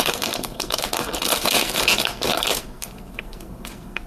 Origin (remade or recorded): remade